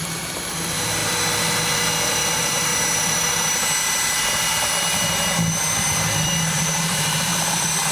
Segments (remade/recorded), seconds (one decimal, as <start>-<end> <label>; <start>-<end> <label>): 0.0-1.0 remade; 1.0-2.1 recorded; 2.1-2.7 remade; 2.7-6.3 recorded; 6.3-7.9 remade